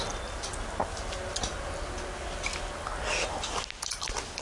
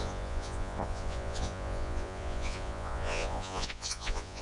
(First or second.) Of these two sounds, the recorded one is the first